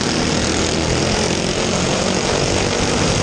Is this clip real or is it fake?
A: real